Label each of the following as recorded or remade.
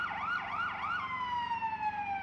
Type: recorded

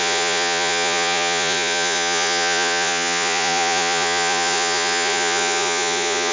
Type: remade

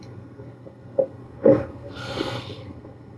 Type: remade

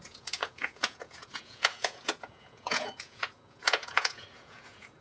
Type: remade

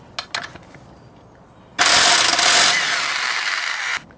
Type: recorded